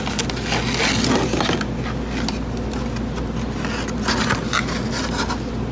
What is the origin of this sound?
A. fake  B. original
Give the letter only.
B